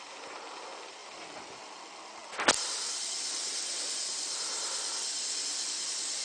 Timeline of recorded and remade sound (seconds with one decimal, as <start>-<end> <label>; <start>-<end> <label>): 0.0-6.2 recorded